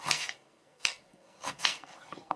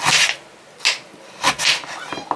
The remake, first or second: first